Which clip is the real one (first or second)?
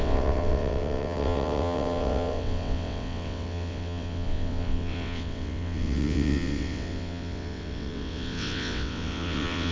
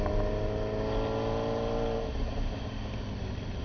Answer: second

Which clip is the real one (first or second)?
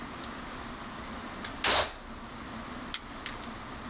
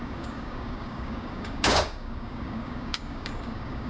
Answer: first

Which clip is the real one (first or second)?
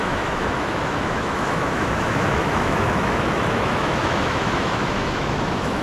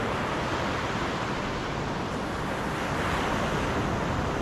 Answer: second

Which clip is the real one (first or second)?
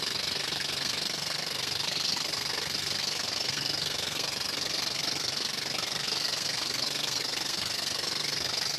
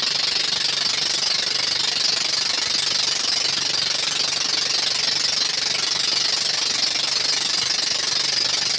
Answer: second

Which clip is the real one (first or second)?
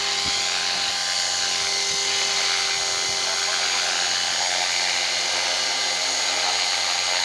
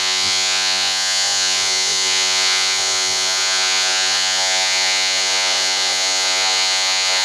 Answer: first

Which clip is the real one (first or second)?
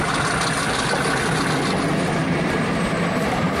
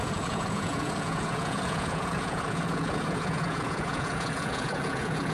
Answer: first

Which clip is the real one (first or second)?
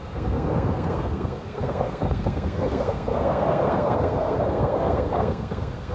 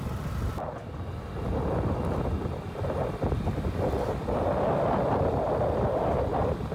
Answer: second